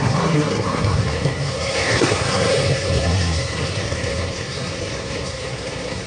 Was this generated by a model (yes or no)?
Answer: yes